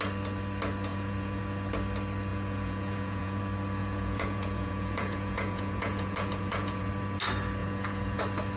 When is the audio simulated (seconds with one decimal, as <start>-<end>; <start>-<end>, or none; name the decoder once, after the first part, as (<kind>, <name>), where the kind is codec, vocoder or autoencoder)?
0.9-1.4 (vocoder, Vocos); 2.3-3.4; 3.8-6.9; 7.6-8.2